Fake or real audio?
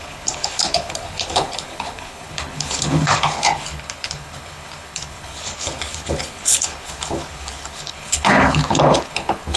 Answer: fake